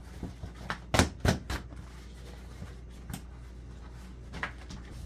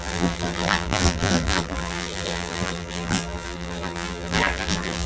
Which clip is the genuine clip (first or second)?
first